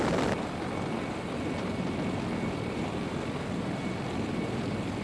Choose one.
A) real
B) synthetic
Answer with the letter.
A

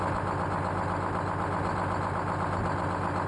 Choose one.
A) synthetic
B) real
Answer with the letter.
B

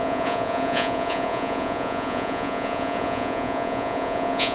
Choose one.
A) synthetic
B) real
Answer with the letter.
A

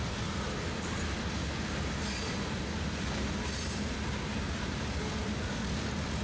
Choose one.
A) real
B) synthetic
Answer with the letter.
A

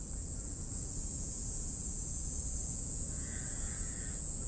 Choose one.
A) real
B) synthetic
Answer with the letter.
B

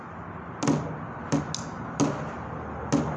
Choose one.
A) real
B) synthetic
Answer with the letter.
A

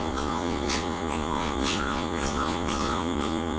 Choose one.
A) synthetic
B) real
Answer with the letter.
A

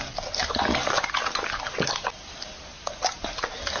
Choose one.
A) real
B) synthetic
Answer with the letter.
A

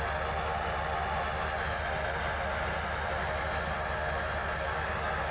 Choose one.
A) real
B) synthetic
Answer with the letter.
A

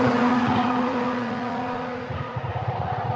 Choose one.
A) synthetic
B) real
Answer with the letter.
A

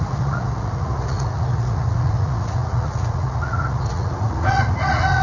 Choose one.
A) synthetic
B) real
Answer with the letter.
A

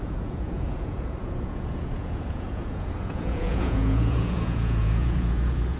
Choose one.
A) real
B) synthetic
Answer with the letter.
B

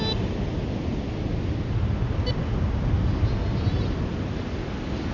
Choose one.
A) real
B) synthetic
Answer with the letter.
A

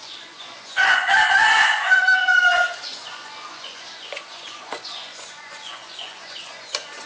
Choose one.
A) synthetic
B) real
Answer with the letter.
A